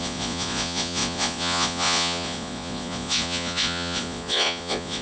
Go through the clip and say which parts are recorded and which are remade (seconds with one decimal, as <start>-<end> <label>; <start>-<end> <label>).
0.0-5.0 remade